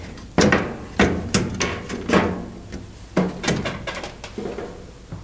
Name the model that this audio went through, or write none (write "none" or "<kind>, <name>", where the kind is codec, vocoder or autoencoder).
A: none